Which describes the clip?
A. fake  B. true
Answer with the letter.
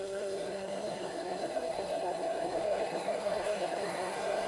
A